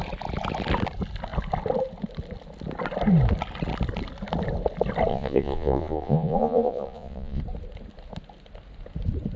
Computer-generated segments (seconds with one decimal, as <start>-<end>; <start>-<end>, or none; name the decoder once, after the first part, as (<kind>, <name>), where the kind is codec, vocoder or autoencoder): 5.1-7.4 (vocoder, Vocos)